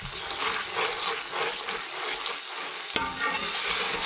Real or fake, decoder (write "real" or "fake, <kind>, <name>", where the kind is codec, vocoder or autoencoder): real